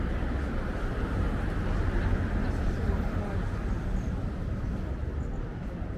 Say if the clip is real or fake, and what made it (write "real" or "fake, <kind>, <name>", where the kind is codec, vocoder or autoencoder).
real